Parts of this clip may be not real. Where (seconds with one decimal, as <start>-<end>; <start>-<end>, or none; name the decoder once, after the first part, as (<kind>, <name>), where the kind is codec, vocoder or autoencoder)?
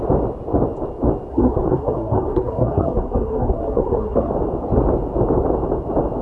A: 1.3-4.3 (codec, SNAC)